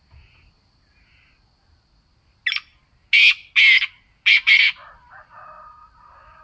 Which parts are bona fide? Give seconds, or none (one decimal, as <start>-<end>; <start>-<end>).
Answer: 0.0-6.4